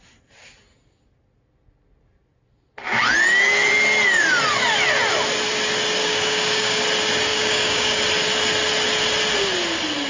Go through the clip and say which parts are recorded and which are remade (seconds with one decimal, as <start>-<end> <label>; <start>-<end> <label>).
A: 0.0-6.0 recorded; 6.0-6.8 remade; 6.8-7.3 recorded; 7.3-8.0 remade; 8.0-10.1 recorded